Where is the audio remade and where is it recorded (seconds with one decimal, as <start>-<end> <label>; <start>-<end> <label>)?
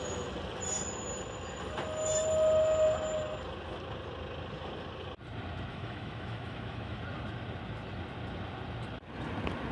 0.0-5.7 recorded; 5.7-7.0 remade; 7.0-9.7 recorded